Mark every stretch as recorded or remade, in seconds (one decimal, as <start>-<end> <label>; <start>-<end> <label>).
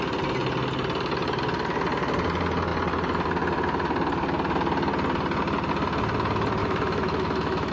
0.0-6.6 recorded; 6.6-7.7 remade